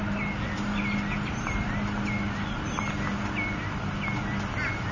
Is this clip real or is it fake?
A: real